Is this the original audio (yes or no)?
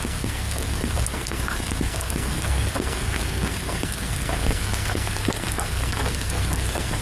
no